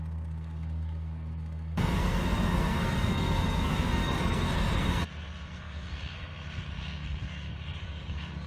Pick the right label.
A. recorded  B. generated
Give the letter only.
B